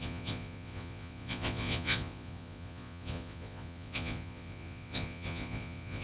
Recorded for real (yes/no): no